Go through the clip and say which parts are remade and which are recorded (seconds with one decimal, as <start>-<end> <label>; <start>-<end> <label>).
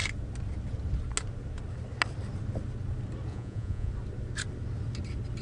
0.0-3.3 recorded; 3.3-3.9 remade; 3.9-5.4 recorded